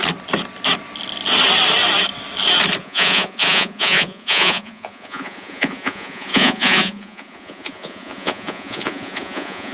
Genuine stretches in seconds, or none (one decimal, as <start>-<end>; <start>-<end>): 0.0-2.8